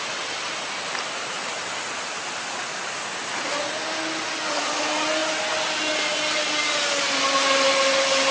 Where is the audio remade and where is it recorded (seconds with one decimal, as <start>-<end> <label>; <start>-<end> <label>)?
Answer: 0.0-8.3 recorded